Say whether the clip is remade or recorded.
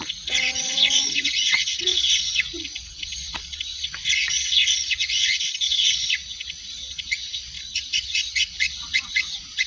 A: remade